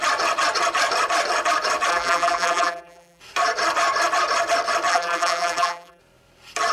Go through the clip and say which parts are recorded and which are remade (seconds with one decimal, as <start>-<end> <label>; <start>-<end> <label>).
0.0-1.9 recorded; 1.9-3.2 remade; 3.2-4.9 recorded; 4.9-6.0 remade; 6.0-6.7 recorded